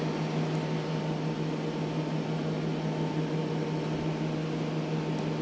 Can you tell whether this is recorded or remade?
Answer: recorded